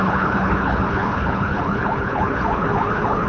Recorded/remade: remade